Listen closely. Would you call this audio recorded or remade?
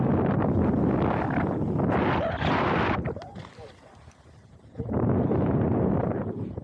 recorded